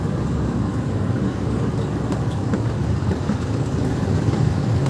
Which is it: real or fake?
fake